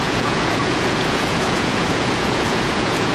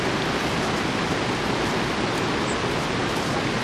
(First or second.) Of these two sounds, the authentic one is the second